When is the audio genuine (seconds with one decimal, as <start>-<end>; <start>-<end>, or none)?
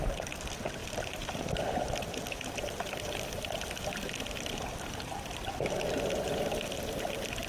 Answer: 0.0-0.8; 5.3-7.5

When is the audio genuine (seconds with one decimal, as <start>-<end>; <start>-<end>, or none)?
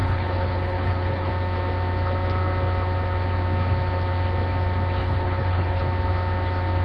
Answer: 1.3-5.0; 5.8-6.8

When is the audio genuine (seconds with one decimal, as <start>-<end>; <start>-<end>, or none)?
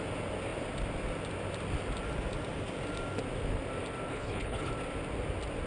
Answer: 0.0-4.1; 4.7-5.7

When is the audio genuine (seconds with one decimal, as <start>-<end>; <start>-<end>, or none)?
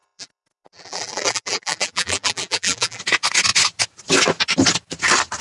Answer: 3.0-5.4